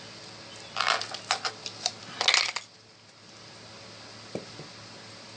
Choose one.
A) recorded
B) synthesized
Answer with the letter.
A